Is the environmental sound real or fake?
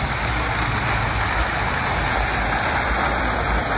real